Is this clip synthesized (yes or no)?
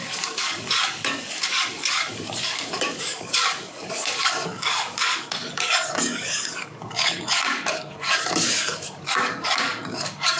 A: yes